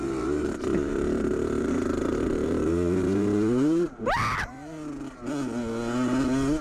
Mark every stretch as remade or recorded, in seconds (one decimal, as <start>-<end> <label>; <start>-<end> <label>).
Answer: 0.0-4.2 remade; 4.2-6.6 recorded